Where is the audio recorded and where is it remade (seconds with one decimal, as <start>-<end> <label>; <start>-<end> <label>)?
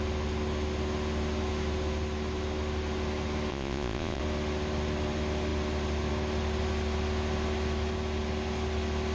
0.0-3.5 recorded; 3.5-4.2 remade; 4.2-9.1 recorded